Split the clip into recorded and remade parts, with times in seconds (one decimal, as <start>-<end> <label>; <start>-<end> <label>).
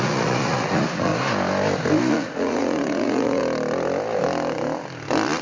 0.0-1.1 remade; 1.1-2.1 recorded; 2.1-3.4 remade; 3.4-5.4 recorded